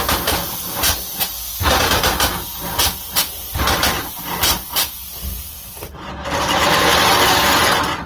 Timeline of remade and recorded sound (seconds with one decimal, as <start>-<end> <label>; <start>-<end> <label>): 0.0-5.0 recorded; 5.0-6.1 remade; 6.1-8.1 recorded